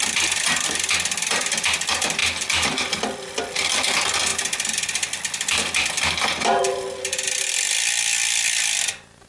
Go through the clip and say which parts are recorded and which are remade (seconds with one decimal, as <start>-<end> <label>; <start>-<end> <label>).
0.0-9.3 recorded